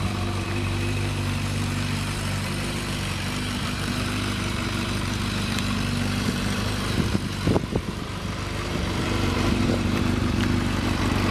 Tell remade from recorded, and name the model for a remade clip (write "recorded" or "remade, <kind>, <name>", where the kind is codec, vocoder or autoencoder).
remade, vocoder, BigVGAN v2